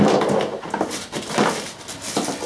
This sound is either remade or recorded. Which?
recorded